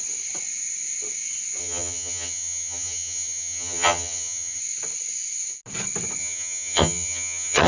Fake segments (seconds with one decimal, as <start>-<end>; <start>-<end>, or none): 1.6-4.6; 6.2-7.7